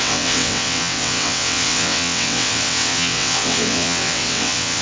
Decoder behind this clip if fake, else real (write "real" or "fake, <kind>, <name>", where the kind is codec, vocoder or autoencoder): fake, vocoder, WaveNeXt